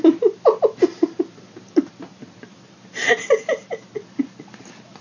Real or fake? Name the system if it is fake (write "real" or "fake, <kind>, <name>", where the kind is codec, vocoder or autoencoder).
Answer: real